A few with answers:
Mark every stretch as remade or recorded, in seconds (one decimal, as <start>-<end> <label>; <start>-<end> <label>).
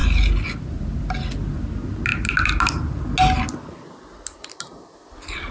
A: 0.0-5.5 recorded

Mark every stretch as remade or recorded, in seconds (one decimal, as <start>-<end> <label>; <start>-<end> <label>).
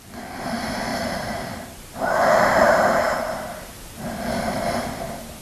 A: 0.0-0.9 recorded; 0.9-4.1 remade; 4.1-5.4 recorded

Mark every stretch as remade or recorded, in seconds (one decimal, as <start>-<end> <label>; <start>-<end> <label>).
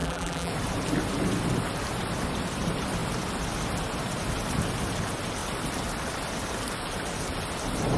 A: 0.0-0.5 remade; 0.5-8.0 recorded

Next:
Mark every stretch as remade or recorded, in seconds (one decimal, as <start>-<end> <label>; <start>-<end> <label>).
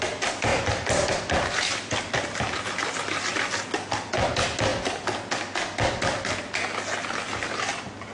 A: 0.0-0.5 recorded; 0.5-3.2 remade; 3.2-8.1 recorded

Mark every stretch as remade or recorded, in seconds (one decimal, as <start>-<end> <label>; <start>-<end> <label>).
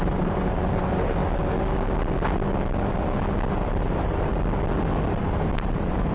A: 0.0-1.2 remade; 1.2-3.5 recorded; 3.5-4.3 remade; 4.3-5.2 recorded; 5.2-6.1 remade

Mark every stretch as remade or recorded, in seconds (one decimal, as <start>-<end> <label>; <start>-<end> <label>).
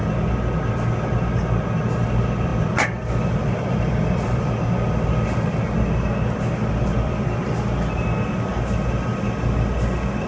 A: 0.0-2.5 recorded; 2.5-4.5 remade; 4.5-6.9 recorded; 6.9-7.6 remade; 7.6-10.3 recorded